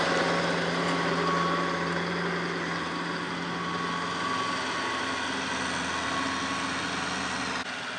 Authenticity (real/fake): real